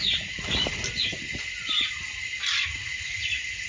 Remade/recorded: recorded